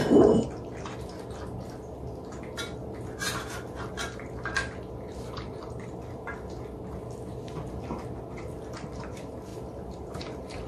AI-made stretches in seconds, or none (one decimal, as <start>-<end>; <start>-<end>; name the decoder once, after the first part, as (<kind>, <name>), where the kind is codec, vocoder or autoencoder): none